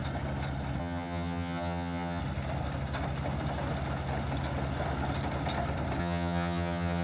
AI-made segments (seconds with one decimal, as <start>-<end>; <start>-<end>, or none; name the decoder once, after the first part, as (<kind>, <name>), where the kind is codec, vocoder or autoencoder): 0.8-2.2 (vocoder, HiFi-GAN); 6.0-7.0